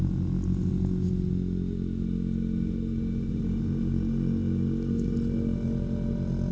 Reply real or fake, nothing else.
real